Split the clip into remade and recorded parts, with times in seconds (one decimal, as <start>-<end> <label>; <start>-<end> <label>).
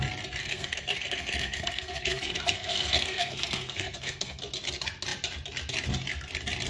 0.0-0.4 recorded; 0.4-4.4 remade; 4.4-6.7 recorded